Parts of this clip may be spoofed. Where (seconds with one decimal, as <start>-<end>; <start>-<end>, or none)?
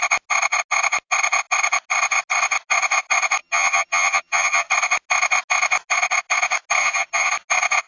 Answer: 3.4-4.7; 6.8-7.3